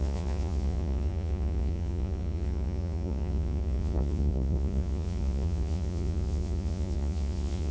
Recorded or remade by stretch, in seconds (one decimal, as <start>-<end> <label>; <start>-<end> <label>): 0.0-7.7 remade